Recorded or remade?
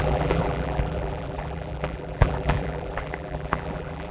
remade